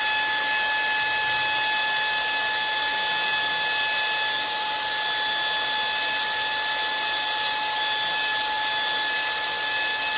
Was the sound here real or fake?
real